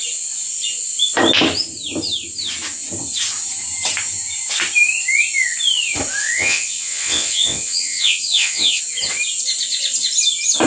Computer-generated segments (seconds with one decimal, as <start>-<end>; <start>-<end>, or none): 6.2-8.8